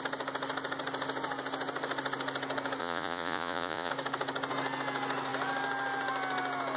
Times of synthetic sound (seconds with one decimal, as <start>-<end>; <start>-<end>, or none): 2.8-3.9

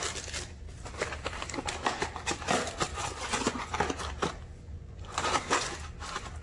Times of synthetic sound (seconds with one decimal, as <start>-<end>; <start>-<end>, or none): 2.9-3.7; 4.5-5.8